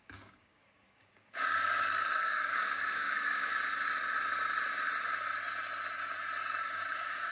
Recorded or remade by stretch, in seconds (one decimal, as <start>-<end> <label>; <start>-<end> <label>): 0.0-3.5 remade; 3.5-6.6 recorded; 6.6-7.3 remade